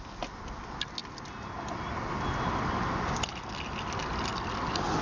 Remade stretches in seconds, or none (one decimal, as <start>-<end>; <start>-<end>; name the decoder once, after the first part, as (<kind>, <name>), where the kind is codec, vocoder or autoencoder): none